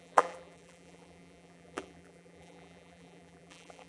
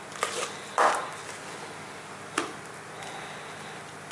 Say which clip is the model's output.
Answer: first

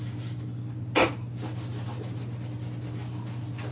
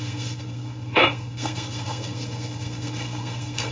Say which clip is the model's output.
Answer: second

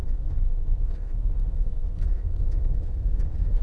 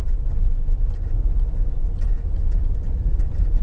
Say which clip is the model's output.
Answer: first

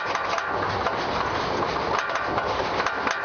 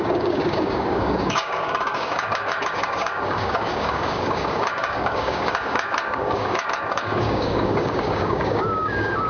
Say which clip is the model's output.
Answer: second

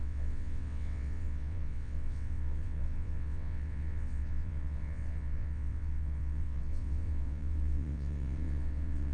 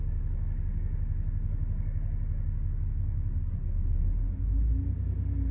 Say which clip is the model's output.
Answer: first